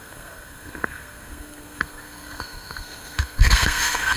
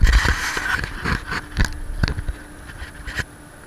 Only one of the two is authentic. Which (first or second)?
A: second